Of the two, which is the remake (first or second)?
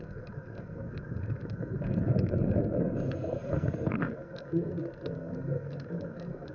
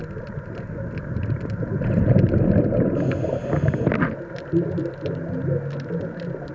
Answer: first